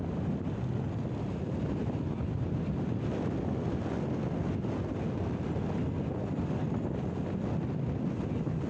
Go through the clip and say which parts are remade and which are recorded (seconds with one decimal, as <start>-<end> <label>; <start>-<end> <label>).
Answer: 0.0-8.7 recorded